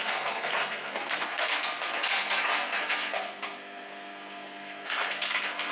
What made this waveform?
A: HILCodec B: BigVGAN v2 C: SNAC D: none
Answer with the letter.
C